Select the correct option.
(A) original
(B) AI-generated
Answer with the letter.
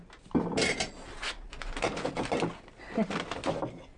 A